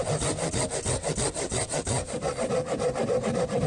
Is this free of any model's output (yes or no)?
yes